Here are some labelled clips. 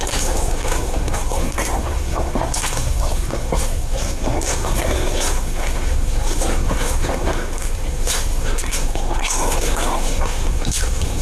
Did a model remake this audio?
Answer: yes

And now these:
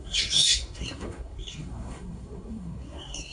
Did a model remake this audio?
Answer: yes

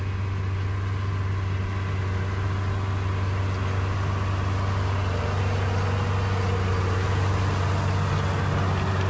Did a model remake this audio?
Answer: no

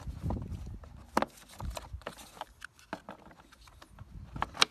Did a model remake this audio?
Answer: no